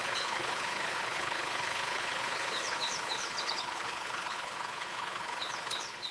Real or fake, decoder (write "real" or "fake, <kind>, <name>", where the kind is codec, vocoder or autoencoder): fake, codec, HILCodec